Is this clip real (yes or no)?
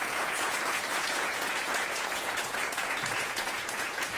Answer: no